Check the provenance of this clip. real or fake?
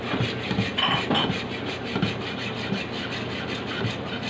real